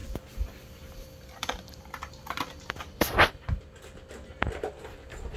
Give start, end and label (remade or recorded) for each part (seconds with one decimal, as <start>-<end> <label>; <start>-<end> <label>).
0.0-3.2 remade; 3.2-5.4 recorded